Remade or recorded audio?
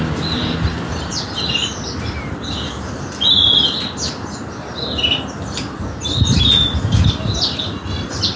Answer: recorded